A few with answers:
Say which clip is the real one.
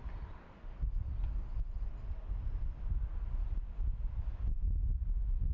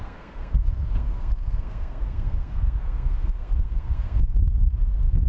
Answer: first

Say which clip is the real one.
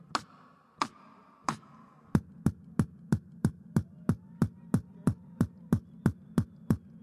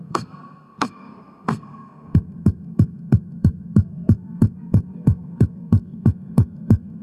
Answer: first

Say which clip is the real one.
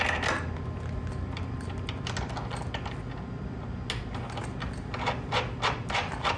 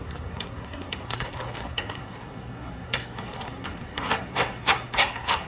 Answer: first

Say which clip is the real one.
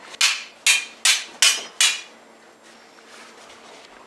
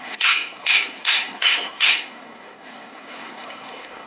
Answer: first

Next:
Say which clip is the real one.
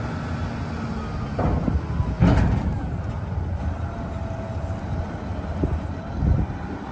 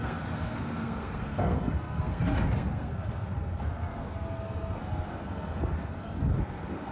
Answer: first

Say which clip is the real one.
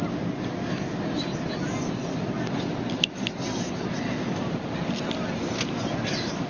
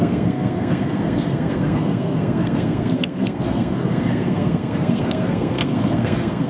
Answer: first